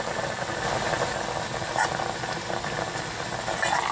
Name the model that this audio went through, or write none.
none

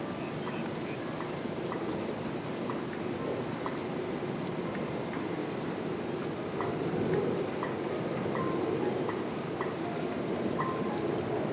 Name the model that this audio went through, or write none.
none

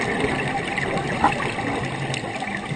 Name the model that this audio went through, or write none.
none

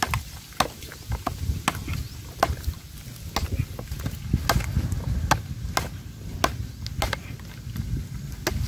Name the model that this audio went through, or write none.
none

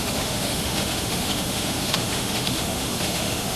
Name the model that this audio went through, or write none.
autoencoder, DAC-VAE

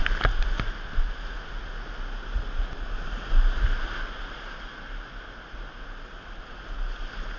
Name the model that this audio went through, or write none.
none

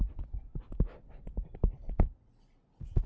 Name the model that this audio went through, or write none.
none